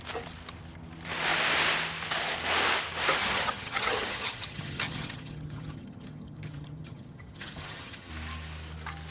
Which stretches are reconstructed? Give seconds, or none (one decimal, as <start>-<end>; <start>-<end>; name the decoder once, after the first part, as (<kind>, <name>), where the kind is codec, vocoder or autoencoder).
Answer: 3.2-8.1 (vocoder, HiFi-GAN)